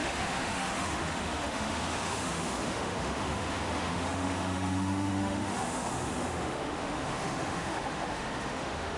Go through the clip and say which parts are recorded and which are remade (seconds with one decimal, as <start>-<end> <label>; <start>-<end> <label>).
0.0-9.0 remade

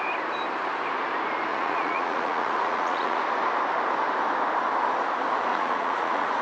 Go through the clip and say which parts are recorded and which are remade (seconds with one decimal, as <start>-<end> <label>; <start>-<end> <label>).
0.0-1.5 recorded; 1.5-3.2 remade; 3.2-5.5 recorded; 5.5-6.4 remade